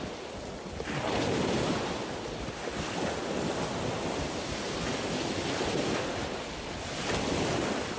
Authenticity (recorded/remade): recorded